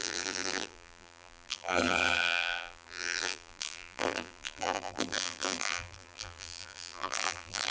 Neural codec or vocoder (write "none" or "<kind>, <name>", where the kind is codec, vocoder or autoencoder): vocoder, BigVGAN v2